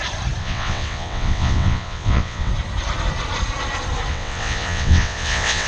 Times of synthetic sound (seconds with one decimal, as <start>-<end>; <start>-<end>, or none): 0.4-2.5; 4.1-5.7

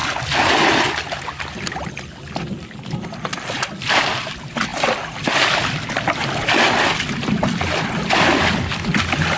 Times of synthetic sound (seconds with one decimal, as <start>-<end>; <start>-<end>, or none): none

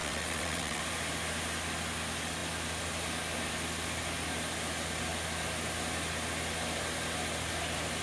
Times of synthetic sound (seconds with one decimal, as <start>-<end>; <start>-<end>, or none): 0.0-0.8

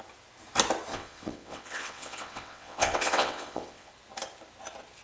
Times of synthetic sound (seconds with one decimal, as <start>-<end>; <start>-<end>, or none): 0.9-3.9

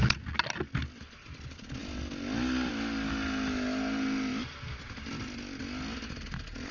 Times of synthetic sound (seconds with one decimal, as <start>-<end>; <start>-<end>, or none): none

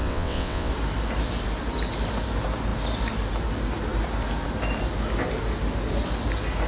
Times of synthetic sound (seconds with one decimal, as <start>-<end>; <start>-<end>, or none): 0.0-0.7